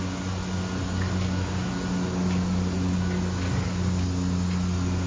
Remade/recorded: recorded